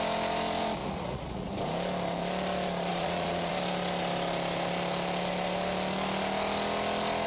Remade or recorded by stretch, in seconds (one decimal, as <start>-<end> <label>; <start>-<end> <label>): 0.0-0.8 recorded; 0.8-1.5 remade; 1.5-2.9 recorded; 2.9-3.5 remade; 3.5-7.3 recorded